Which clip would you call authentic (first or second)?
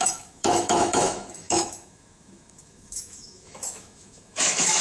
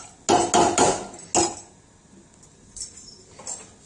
second